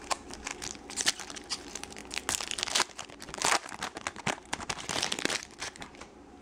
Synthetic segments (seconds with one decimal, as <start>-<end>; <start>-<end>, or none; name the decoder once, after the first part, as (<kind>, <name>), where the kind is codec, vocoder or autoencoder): 0.0-0.5 (vocoder, BigVGAN v2); 1.2-2.0; 3.2-6.4